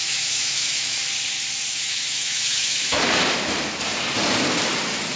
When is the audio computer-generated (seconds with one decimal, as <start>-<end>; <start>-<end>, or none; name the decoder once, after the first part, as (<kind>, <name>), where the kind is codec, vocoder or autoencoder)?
0.0-1.0 (autoencoder, DAC-VAE); 1.7-3.0